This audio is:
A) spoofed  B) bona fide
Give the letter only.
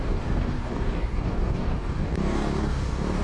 A